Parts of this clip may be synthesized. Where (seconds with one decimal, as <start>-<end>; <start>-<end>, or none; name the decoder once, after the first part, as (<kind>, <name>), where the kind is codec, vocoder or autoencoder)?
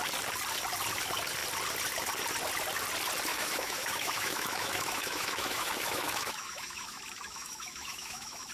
3.3-8.5 (autoencoder, DAC-VAE)